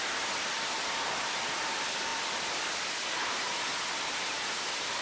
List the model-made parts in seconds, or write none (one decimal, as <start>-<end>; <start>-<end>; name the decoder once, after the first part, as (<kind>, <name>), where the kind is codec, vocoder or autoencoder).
none

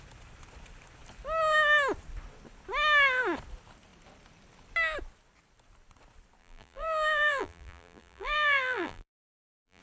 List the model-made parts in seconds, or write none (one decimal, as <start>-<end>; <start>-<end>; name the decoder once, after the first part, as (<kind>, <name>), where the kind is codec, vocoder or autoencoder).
6.4-9.8 (vocoder, BigVGAN v2)

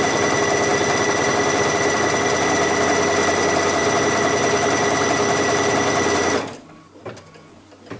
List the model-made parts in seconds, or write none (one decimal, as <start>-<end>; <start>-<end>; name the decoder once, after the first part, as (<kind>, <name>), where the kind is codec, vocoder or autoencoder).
none

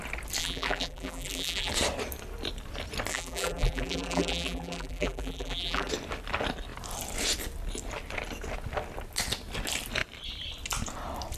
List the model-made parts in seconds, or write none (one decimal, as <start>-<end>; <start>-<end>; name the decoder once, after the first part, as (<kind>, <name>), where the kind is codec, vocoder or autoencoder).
0.4-1.7 (vocoder, BigVGAN v2); 3.1-5.9

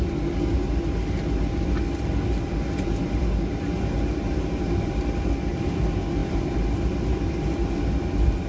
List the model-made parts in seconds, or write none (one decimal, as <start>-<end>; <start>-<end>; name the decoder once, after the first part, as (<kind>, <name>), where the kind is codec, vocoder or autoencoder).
4.3-4.9 (vocoder, BigVGAN v2); 6.2-6.7

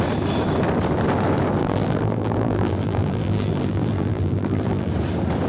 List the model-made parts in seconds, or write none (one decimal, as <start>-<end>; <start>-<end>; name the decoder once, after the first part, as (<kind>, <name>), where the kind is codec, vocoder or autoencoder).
1.6-4.9 (vocoder, BigVGAN v2)

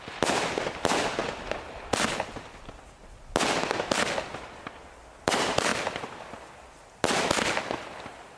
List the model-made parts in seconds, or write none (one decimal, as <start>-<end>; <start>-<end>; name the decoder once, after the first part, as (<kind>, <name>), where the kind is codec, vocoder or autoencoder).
5.7-6.2 (vocoder, BigVGAN v2)